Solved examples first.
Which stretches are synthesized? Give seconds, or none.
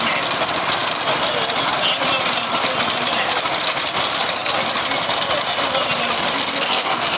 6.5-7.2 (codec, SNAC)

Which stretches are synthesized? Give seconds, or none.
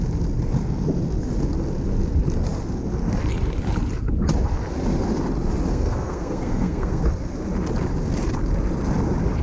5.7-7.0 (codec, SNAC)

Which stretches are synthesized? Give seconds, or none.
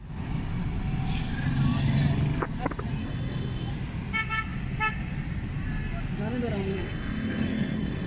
3.0-3.7 (codec, SNAC); 6.7-8.1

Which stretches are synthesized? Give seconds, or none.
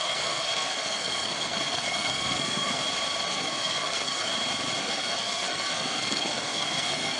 0.0-2.8 (codec, SNAC); 3.3-4.3; 4.8-7.2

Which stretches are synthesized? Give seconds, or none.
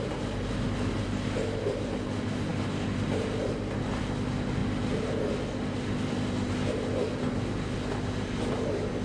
none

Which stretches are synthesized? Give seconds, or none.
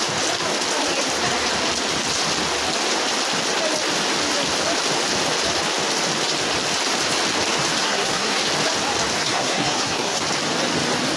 7.8-8.4 (codec, SNAC); 9.2-10.2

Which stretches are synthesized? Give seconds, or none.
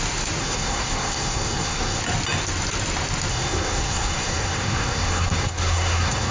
0.4-2.0 (codec, SNAC); 3.3-6.3